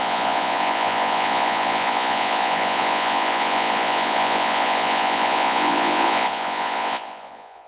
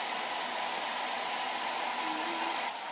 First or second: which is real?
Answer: second